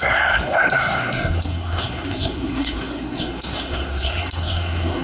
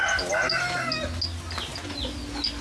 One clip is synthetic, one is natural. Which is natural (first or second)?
second